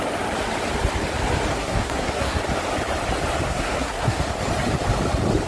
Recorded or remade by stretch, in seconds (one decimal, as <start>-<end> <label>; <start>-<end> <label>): 0.0-1.5 recorded; 1.5-2.4 remade; 2.4-3.5 recorded; 3.5-4.2 remade; 4.2-5.5 recorded

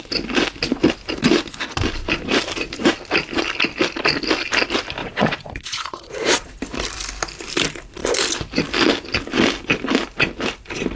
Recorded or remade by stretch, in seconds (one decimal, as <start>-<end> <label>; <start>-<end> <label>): 0.0-5.0 recorded; 5.0-6.6 remade; 6.6-11.0 recorded